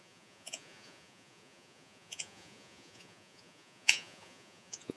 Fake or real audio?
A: fake